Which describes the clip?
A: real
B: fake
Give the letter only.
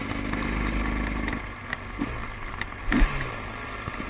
B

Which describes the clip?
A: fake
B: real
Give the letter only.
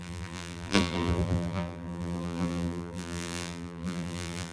A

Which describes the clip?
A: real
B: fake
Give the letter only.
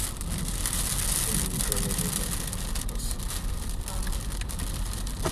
A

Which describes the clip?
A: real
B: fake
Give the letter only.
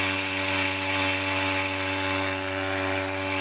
A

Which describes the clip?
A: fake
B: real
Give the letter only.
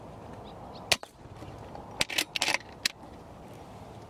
B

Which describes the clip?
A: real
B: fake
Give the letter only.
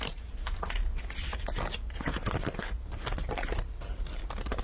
A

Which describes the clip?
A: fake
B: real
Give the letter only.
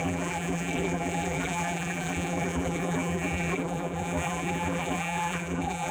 A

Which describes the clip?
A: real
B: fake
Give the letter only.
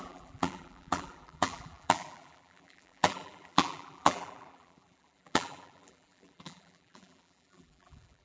B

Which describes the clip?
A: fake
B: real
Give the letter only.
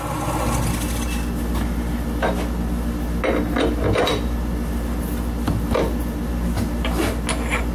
B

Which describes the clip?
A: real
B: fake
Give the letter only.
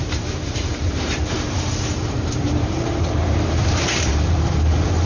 B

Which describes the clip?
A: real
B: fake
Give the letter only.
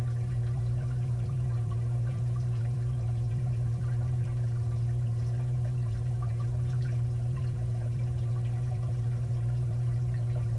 B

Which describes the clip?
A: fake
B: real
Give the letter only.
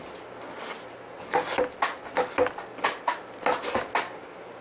B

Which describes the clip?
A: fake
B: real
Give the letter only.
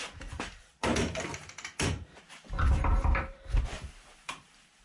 A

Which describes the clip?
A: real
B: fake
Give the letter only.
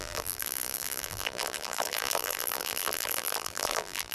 B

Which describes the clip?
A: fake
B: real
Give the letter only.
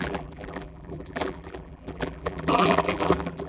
A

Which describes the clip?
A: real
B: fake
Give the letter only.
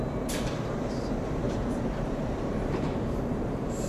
B